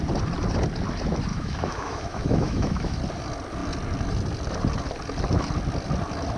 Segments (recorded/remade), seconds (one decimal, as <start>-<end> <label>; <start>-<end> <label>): 0.0-1.3 recorded; 1.3-3.0 remade; 3.0-6.4 recorded